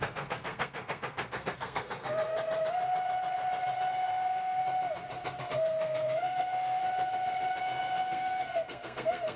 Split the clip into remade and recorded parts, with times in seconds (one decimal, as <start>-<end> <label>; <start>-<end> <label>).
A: 0.0-2.3 remade; 2.3-3.9 recorded; 3.9-4.6 remade; 4.6-5.4 recorded; 5.4-6.8 remade; 6.8-7.6 recorded; 7.6-9.4 remade

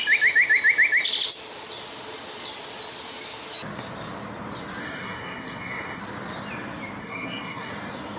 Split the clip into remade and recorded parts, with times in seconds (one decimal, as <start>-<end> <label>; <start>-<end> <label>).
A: 0.0-4.8 recorded; 4.8-6.0 remade; 6.0-7.0 recorded; 7.0-7.7 remade; 7.7-8.2 recorded

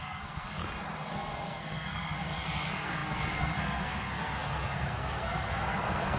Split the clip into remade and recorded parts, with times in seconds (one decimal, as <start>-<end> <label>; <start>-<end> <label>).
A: 0.0-0.6 remade; 0.6-1.1 recorded; 1.1-6.2 remade

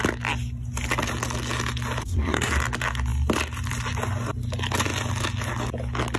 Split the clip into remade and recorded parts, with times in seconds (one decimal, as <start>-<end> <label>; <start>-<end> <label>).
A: 0.0-2.0 recorded; 2.0-2.5 remade; 2.5-6.2 recorded

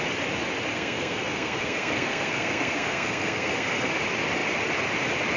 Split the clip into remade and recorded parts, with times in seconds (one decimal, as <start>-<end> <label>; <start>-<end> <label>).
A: 0.0-0.7 recorded; 0.7-3.9 remade; 3.9-5.4 recorded